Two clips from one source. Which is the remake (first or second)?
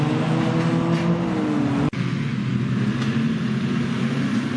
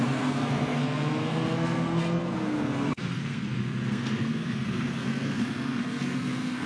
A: second